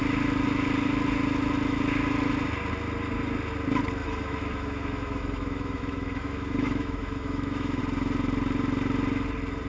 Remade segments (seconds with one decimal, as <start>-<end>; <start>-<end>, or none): 4.0-7.8